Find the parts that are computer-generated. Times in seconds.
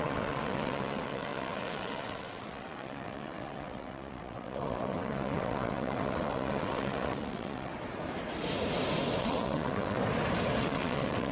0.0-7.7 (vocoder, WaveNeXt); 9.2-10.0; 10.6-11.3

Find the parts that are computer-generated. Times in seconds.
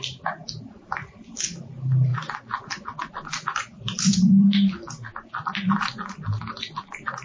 none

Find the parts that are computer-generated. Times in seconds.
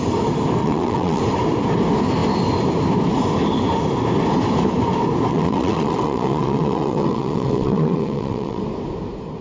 0.6-1.2 (vocoder, WaveNeXt); 5.3-8.6